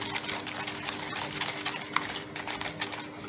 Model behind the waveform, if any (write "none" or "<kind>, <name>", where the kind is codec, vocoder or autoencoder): none